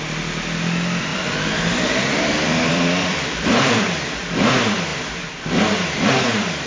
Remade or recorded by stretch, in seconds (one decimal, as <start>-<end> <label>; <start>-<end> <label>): 0.0-1.1 recorded; 1.1-4.5 remade; 4.5-4.9 recorded; 4.9-6.1 remade; 6.1-6.7 recorded

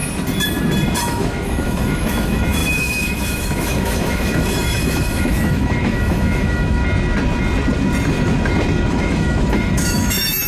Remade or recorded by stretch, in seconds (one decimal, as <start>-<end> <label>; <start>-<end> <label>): 0.0-1.0 recorded; 1.0-6.8 remade; 6.8-8.9 recorded; 8.9-10.5 remade

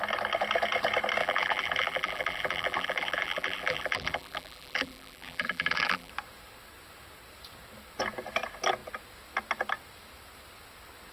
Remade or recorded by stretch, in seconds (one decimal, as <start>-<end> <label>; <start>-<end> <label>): 0.0-1.2 recorded; 1.2-6.1 remade; 6.1-11.1 recorded

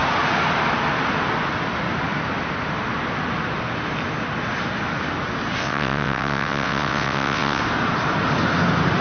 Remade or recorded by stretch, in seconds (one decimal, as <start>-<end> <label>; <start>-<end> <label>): 0.0-5.6 recorded; 5.6-7.6 remade; 7.6-9.0 recorded

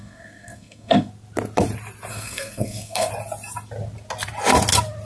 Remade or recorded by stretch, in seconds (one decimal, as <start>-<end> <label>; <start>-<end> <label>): 0.0-1.1 remade; 1.1-2.1 recorded; 2.1-3.1 remade; 3.1-5.1 recorded

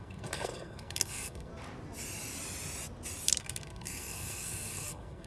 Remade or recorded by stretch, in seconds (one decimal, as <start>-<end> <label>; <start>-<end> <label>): 0.0-1.5 remade; 1.5-3.4 recorded; 3.4-5.3 remade

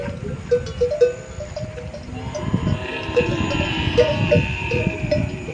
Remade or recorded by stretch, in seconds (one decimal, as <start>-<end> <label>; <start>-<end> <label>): 0.0-2.0 recorded; 2.0-5.5 remade